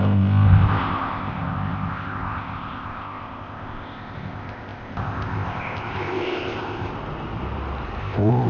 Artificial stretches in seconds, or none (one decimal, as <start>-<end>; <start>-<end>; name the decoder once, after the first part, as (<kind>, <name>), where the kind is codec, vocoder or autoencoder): 0.0-6.9 (codec, ZipCodec); 8.0-8.5